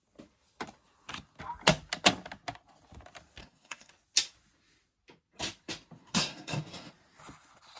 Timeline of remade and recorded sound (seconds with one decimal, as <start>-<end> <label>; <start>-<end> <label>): 0.0-3.4 recorded; 3.4-3.9 remade; 3.9-6.0 recorded; 6.0-6.9 remade; 6.9-7.8 recorded